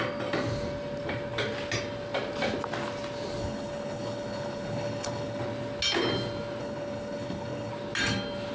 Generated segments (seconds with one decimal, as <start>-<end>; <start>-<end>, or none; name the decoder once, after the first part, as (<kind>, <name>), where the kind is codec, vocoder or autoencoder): 3.4-5.4 (codec, HILCodec); 6.6-7.7